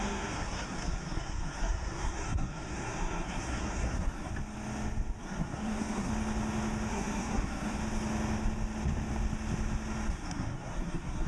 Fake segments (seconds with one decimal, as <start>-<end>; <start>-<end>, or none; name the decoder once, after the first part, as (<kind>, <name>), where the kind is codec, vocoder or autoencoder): 0.0-4.3 (codec, SNAC); 5.2-6.1; 6.9-7.8; 10.1-11.3